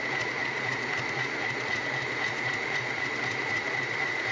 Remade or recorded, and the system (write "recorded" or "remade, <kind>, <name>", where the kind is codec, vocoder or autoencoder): remade, vocoder, Vocos